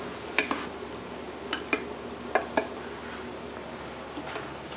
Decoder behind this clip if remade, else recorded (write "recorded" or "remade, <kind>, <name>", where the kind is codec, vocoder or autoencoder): recorded